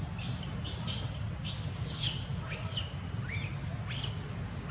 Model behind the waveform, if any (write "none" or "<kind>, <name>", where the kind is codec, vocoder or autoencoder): none